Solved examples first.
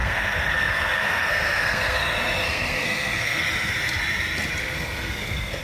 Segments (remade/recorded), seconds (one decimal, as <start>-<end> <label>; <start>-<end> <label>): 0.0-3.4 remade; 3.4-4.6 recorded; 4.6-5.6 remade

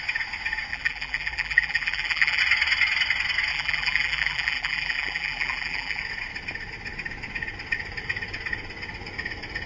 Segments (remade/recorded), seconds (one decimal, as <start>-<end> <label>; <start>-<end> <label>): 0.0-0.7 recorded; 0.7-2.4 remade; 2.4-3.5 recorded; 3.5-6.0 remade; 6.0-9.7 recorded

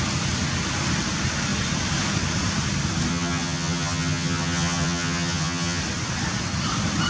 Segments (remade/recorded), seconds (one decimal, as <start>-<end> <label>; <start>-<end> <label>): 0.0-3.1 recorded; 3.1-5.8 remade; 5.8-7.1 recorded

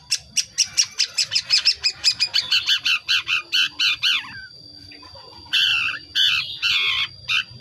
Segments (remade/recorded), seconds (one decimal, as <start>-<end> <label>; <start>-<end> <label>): 0.0-7.6 recorded

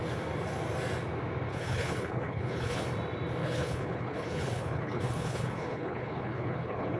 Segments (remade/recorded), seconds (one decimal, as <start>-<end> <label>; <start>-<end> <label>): 0.0-1.5 recorded; 1.5-2.8 remade; 2.8-3.4 recorded; 3.4-7.0 remade